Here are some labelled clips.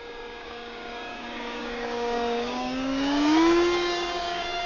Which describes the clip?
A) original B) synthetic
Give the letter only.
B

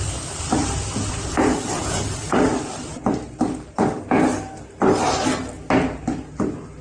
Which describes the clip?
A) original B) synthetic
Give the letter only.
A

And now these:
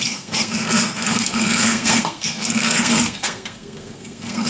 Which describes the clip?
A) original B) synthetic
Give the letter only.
B